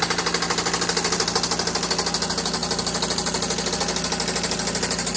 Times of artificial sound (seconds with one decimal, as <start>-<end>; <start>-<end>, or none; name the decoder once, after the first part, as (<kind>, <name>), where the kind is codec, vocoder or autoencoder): none